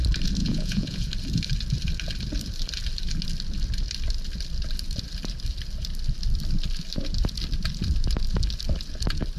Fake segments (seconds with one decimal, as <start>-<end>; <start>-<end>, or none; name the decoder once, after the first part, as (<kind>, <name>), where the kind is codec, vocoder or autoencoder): 0.4-1.1 (vocoder, Vocos)